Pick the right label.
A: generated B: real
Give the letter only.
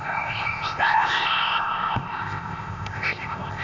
A